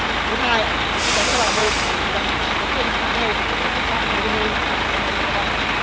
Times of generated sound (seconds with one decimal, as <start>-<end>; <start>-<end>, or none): 1.6-2.7